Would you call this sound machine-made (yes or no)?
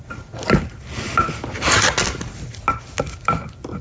no